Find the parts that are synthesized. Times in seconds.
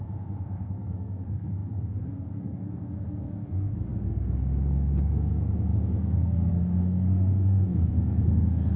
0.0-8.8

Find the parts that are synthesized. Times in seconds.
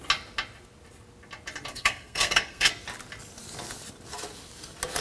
1.7-2.7